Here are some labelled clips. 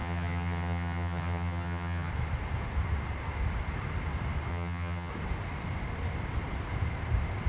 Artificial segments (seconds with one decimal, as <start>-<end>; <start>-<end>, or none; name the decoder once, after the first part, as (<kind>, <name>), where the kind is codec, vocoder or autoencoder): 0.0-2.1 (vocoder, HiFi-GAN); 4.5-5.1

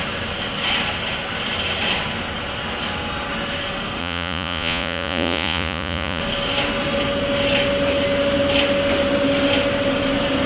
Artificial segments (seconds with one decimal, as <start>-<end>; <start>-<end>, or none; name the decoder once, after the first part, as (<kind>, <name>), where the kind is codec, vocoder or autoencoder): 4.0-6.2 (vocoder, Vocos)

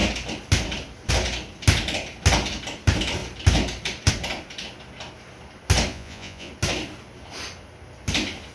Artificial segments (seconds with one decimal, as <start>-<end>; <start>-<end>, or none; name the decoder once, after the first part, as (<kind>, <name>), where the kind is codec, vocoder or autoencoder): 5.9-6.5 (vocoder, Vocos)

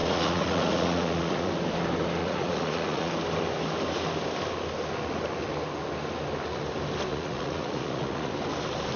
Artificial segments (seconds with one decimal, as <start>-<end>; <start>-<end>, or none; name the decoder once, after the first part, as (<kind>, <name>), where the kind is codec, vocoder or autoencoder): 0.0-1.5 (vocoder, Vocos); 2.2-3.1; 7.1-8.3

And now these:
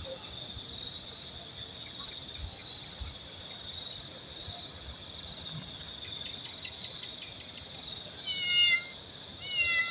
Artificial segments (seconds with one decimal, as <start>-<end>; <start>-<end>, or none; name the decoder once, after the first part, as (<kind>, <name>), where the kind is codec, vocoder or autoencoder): none

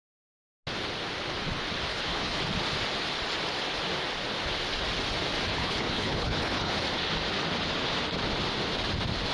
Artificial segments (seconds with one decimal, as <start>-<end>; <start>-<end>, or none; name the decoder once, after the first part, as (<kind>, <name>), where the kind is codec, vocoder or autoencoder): 1.9-2.4 (codec, HILCodec); 5.5-6.7